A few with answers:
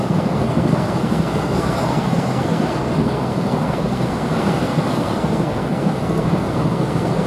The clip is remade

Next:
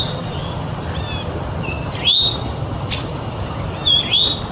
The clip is recorded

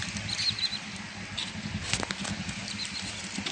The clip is recorded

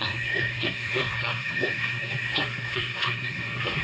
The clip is remade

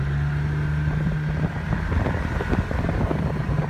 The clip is recorded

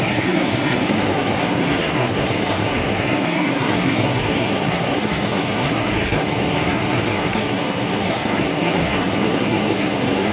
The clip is remade